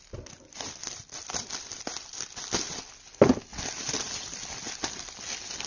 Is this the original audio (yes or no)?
yes